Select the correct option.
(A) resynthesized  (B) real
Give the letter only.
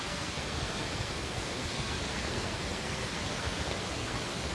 A